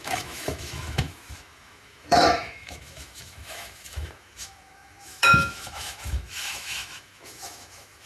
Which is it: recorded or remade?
remade